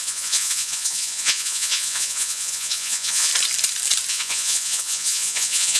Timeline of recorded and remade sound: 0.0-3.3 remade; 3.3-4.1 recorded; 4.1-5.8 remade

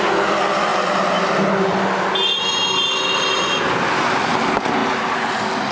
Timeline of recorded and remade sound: 0.0-5.7 recorded